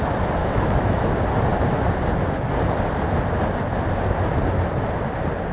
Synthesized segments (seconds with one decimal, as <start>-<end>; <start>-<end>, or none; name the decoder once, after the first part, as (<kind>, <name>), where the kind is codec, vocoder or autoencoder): 0.4-1.1 (autoencoder, DAC-VAE)